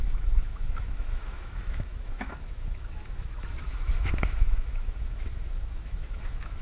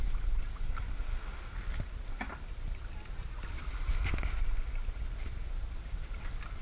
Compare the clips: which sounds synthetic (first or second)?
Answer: first